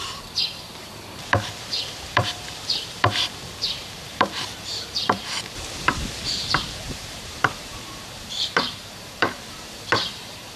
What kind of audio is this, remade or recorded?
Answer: remade